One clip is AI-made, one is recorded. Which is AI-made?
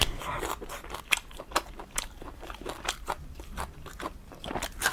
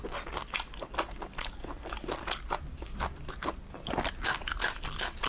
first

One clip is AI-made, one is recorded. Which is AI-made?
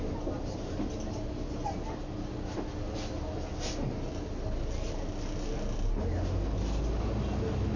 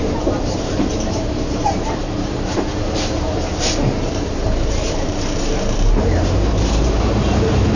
second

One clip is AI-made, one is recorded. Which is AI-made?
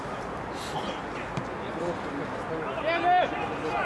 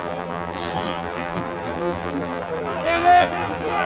second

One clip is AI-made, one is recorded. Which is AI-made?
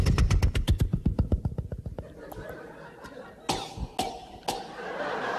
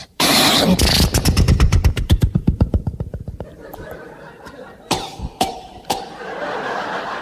second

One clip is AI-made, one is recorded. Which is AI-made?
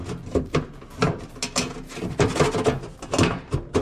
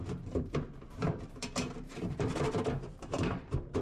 second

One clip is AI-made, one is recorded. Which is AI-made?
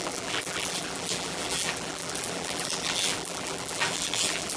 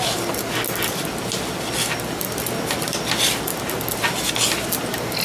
first